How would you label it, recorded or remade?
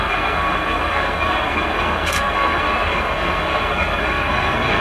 remade